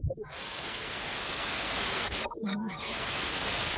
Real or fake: fake